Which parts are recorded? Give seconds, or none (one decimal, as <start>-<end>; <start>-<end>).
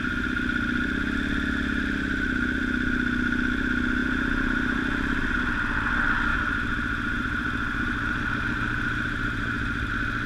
0.0-4.0; 4.8-6.3; 9.9-10.3